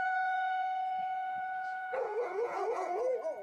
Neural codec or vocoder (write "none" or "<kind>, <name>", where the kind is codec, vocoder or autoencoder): vocoder, Vocos